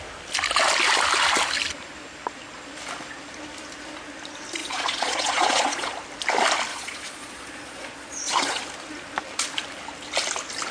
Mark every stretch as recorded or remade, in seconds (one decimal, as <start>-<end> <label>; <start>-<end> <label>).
0.0-4.6 recorded; 4.6-5.9 remade; 5.9-6.7 recorded; 6.7-8.6 remade; 8.6-10.7 recorded